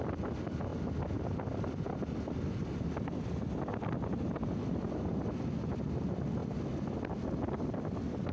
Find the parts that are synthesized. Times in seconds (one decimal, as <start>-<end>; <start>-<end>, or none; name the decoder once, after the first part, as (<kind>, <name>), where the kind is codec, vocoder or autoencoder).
none